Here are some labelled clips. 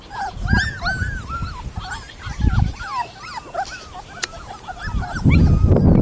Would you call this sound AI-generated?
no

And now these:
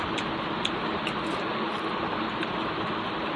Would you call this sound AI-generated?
no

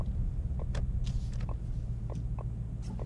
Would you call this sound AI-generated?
no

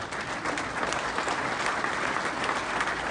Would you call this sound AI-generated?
no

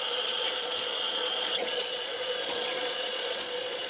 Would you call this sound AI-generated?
yes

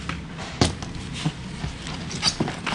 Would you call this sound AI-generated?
no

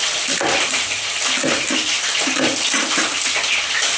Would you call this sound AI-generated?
no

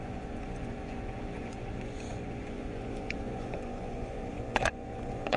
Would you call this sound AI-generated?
yes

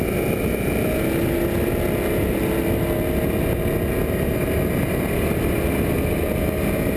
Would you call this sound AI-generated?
no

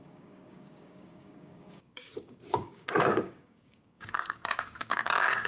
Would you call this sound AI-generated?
yes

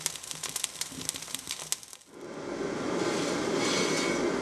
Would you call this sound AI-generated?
no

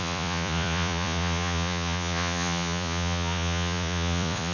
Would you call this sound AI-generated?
yes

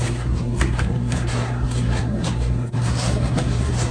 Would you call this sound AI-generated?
yes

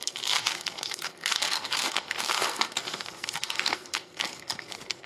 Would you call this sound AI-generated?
yes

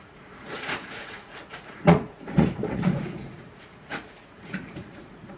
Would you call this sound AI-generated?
yes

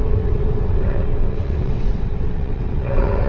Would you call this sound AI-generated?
yes